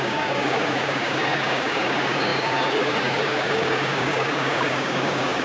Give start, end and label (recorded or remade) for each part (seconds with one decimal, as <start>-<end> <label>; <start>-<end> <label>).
0.0-5.4 remade